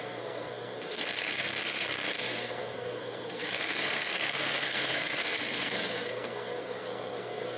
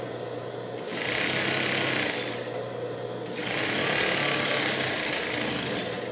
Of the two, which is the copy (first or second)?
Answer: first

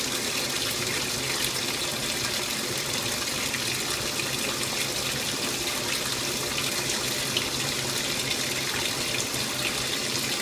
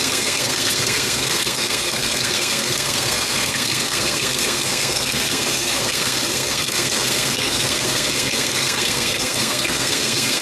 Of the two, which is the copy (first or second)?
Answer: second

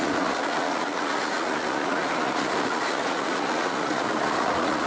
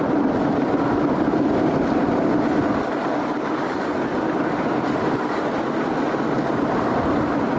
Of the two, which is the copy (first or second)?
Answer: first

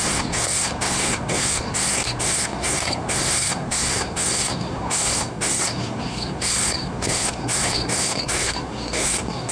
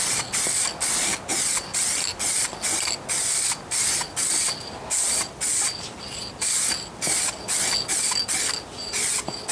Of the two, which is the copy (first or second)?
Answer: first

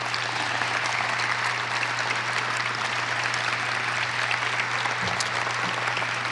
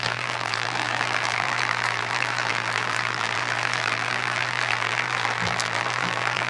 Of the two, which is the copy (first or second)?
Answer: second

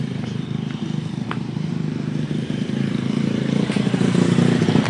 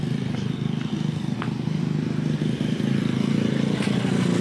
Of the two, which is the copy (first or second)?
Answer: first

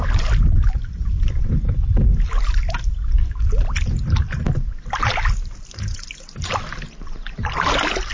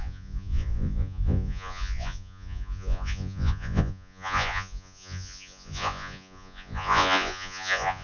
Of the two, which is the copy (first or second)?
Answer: second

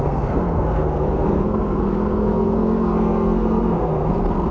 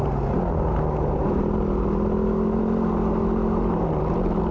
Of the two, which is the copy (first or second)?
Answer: first